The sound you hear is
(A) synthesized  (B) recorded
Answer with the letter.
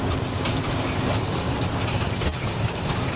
B